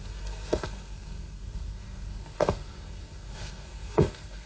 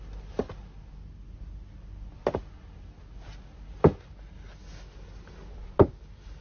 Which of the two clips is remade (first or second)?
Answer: first